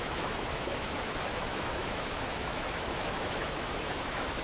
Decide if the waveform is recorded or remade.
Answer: remade